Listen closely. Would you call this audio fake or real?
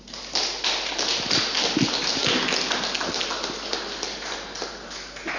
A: real